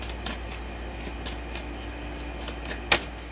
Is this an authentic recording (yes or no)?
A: yes